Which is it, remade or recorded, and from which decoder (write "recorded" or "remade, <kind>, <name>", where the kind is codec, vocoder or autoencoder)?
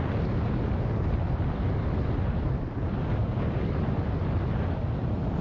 recorded